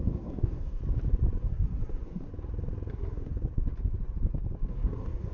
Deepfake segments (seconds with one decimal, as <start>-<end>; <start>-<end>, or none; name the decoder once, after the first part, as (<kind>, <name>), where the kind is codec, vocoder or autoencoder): 0.0-0.8 (codec, SNAC); 1.4-2.3; 2.9-3.3; 4.7-5.3